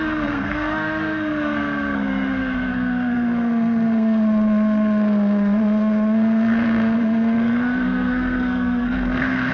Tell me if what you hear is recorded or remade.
remade